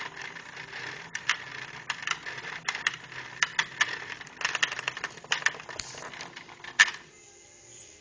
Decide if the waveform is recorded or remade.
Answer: recorded